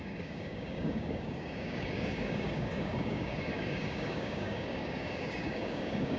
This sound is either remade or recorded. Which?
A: remade